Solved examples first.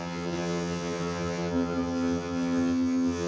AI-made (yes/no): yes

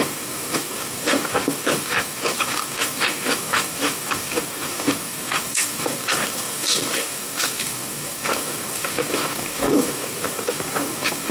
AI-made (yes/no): yes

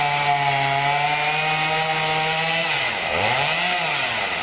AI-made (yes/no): no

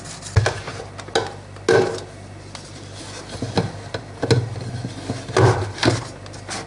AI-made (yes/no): no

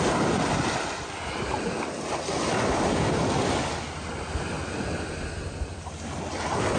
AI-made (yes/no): no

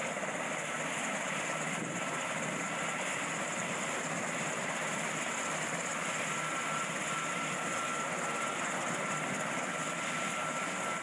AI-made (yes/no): no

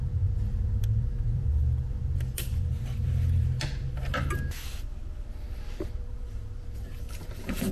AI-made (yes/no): yes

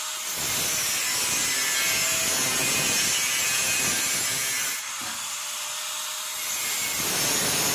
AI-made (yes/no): no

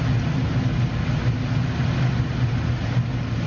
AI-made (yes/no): no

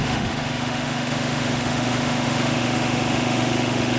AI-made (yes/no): yes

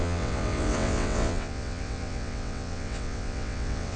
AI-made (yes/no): yes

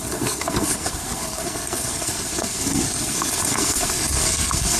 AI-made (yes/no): yes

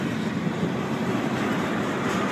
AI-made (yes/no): no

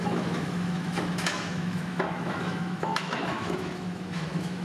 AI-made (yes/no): yes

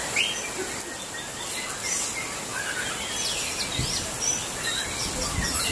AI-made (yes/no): no